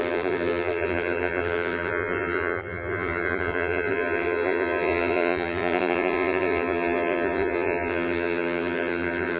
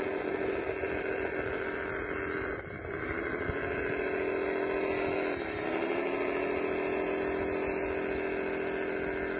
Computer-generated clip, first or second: first